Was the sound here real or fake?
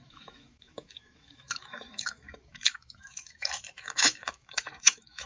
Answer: fake